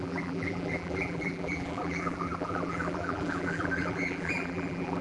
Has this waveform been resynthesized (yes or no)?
yes